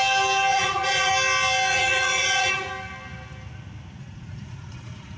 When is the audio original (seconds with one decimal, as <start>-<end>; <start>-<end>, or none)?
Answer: 0.0-0.5; 1.1-1.7; 2.7-4.0